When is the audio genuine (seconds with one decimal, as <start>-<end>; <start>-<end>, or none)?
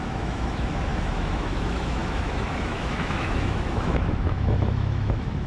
none